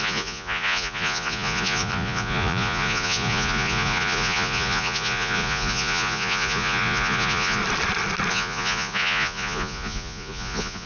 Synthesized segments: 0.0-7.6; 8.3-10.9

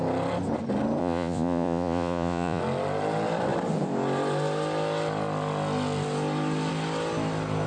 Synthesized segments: 1.0-2.6

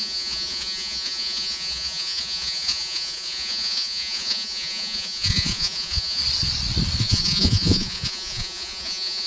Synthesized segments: 0.0-6.2; 7.0-9.3

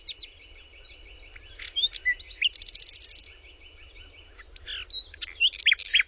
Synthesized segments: none

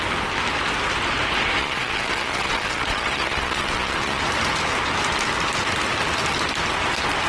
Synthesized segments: 1.6-4.2

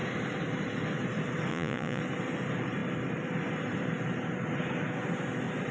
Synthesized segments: 1.5-2.0